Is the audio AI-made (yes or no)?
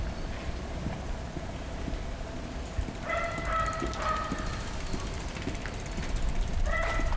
no